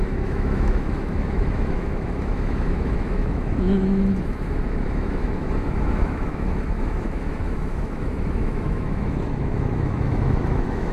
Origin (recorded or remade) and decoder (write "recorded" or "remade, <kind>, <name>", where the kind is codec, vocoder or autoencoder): remade, autoencoder, DAC-VAE